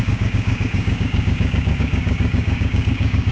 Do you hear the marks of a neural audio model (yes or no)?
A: yes